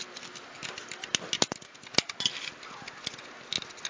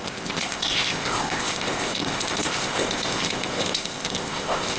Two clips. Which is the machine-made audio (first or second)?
second